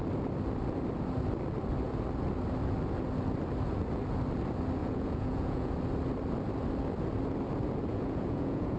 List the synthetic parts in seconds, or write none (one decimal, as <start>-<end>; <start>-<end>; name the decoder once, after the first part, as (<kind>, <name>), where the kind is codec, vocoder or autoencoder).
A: 4.8-5.7 (vocoder, Vocos); 7.9-8.8